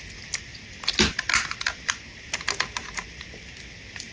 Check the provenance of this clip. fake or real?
real